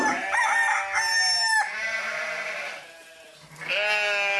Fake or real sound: real